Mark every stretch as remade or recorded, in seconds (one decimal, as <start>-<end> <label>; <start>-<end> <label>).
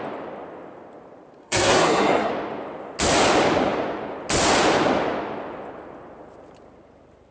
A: 0.0-1.4 recorded; 1.4-2.3 remade; 2.3-7.3 recorded